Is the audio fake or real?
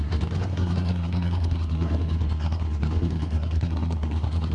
fake